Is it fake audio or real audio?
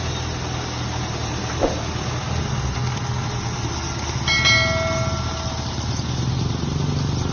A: real